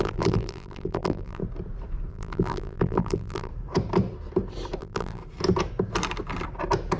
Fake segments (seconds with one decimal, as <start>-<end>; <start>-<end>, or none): 0.0-1.4; 2.1-3.5; 4.8-5.2